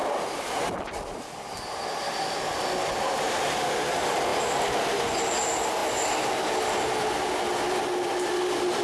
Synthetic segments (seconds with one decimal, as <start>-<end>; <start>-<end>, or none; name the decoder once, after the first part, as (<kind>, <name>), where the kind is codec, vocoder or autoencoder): none